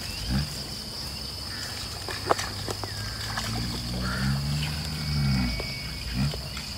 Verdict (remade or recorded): recorded